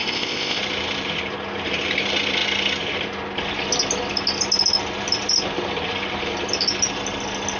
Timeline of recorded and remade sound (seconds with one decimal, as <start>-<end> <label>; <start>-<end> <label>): 0.0-0.6 remade; 0.6-7.6 recorded